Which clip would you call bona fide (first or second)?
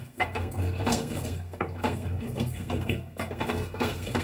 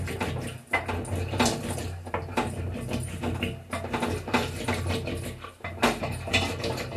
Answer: second